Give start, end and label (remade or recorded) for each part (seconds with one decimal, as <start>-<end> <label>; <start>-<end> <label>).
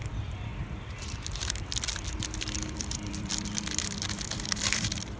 0.0-0.5 remade; 0.5-1.0 recorded; 1.0-5.2 remade